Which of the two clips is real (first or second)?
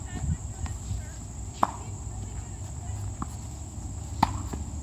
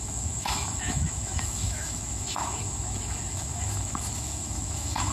first